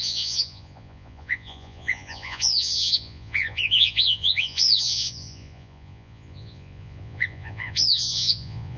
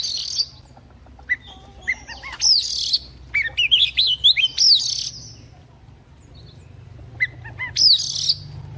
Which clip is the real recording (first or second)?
second